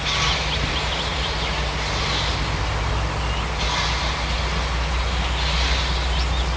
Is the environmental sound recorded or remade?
recorded